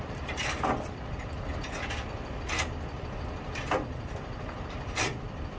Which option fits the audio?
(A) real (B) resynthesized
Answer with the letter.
B